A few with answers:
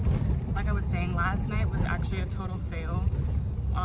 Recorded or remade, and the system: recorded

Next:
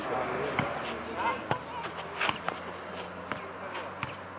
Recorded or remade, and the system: recorded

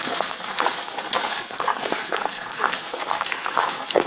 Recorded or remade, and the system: remade, codec, SNAC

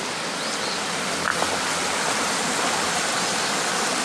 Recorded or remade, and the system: recorded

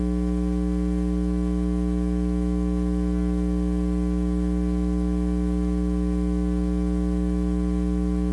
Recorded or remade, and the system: recorded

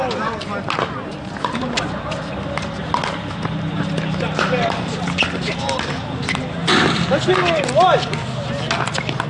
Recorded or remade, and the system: recorded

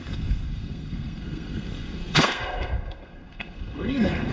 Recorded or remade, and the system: remade, codec, SNAC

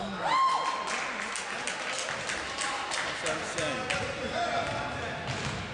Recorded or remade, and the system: recorded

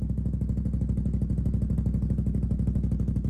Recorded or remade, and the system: recorded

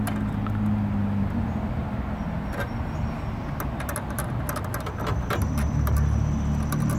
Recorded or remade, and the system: recorded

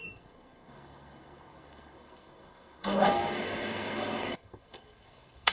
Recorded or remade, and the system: remade, codec, SNAC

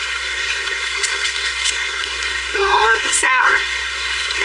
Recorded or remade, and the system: remade, codec, SNAC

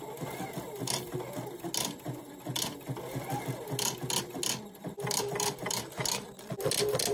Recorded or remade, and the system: recorded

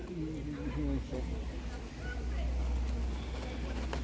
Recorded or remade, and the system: recorded